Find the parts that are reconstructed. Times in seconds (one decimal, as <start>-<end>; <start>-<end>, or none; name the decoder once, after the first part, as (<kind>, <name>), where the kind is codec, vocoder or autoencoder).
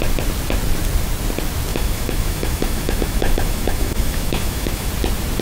1.7-4.9 (autoencoder, DAC-VAE)